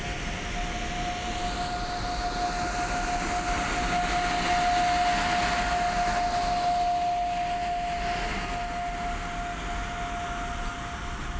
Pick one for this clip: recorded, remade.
recorded